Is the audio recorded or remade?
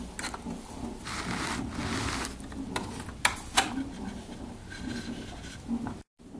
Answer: recorded